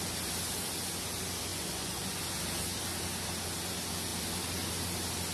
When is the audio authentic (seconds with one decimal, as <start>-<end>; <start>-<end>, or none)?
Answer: 0.0-1.5; 2.2-5.3